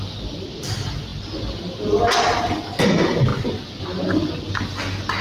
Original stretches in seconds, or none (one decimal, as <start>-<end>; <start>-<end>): 0.0-5.2